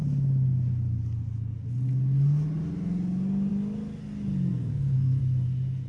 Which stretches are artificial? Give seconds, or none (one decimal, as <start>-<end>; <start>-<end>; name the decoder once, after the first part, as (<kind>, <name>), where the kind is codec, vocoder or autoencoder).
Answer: 4.5-5.2 (codec, SNAC)

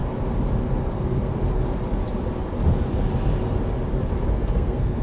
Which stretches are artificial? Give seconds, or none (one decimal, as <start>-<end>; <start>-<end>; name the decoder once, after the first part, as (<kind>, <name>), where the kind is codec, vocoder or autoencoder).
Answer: 0.9-1.3 (codec, SNAC); 4.3-5.0

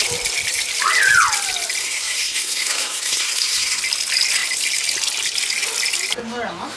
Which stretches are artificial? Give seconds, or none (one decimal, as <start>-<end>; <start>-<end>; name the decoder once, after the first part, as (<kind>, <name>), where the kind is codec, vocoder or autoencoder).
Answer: 1.8-3.8 (codec, SNAC)

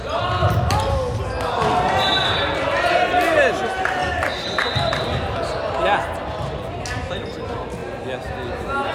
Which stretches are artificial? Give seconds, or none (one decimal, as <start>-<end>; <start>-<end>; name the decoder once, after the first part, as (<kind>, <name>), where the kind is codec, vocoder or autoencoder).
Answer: none

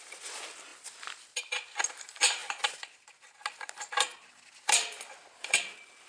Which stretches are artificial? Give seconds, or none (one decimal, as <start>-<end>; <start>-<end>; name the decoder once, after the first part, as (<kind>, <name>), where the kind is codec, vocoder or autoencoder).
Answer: none

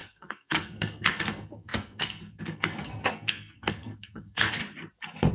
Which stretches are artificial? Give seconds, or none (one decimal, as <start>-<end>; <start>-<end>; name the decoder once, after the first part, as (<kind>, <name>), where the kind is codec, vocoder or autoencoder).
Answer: 0.0-4.6 (codec, SNAC)

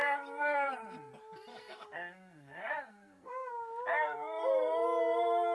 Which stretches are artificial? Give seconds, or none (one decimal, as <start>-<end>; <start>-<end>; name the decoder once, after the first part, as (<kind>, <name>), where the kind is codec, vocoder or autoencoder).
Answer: 0.0-1.1 (codec, SNAC); 1.5-3.5